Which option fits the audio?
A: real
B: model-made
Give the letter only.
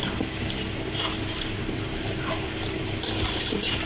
A